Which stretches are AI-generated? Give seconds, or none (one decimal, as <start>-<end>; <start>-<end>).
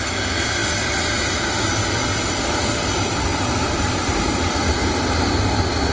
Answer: 3.3-4.8